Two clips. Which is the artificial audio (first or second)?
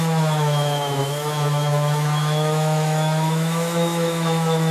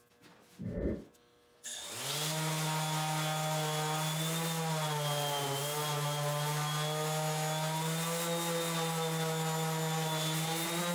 first